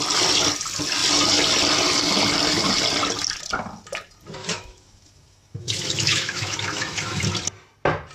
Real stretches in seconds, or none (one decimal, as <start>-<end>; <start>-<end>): 0.0-4.4; 7.2-8.1